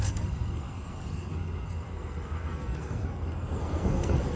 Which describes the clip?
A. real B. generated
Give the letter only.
B